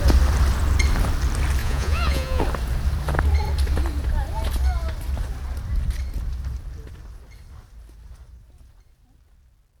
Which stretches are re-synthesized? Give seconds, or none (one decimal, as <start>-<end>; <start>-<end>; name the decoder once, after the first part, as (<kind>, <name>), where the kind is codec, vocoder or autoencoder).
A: 1.6-2.4 (vocoder, Vocos)